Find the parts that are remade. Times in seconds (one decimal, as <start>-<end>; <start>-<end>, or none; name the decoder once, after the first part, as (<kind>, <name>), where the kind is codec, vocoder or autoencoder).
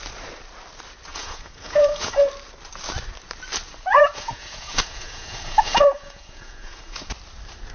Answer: 1.1-2.3 (vocoder, Vocos); 3.9-7.1